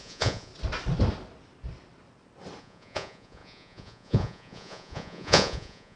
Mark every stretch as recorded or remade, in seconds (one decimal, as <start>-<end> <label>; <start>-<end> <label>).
0.0-0.5 remade; 0.5-2.6 recorded; 2.6-6.0 remade